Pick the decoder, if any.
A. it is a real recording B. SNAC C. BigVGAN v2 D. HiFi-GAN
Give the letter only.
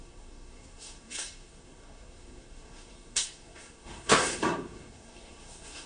B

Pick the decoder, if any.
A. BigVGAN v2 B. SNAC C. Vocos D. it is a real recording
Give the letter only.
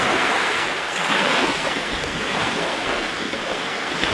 B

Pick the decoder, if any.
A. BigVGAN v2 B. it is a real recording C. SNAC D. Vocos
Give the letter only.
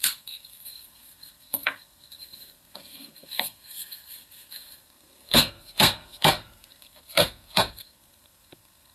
C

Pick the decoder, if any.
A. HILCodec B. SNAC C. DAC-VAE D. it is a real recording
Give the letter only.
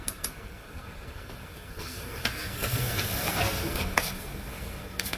B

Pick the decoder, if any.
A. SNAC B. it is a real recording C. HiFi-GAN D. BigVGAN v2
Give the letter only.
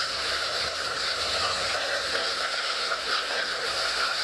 A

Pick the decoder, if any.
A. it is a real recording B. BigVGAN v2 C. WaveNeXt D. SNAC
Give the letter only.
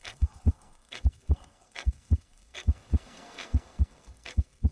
D